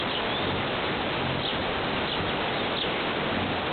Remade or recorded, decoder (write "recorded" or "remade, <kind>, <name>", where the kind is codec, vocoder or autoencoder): recorded